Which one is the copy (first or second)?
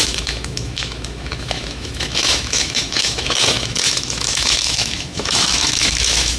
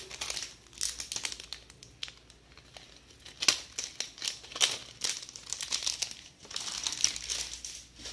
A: first